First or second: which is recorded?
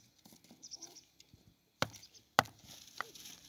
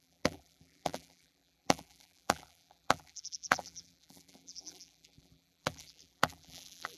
first